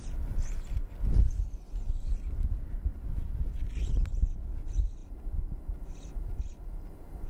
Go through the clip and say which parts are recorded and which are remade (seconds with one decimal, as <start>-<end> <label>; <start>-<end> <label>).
0.0-7.3 recorded